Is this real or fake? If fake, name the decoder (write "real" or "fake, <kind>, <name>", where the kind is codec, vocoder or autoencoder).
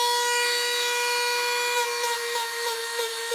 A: fake, autoencoder, DAC-VAE